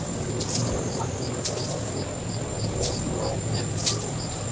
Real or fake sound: real